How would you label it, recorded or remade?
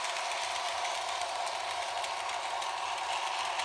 recorded